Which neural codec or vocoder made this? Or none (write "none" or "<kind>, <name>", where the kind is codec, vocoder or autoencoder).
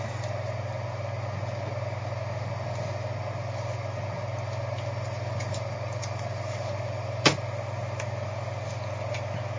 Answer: none